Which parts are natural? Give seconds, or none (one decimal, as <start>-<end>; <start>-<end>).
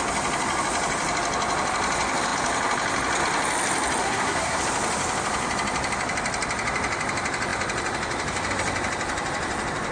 0.0-4.0; 4.6-9.9